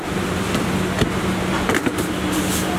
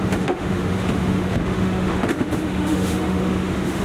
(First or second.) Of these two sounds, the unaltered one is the first